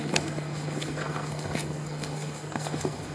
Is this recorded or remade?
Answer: remade